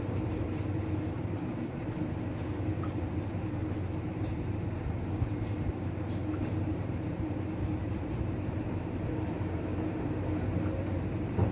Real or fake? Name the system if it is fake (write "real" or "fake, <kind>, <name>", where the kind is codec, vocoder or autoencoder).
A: fake, vocoder, BigVGAN v2